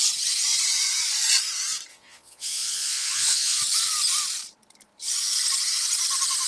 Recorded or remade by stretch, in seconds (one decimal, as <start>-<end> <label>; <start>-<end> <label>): 0.0-1.9 recorded; 1.9-3.6 remade; 3.6-6.5 recorded